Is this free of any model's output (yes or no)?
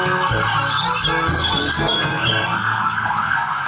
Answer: no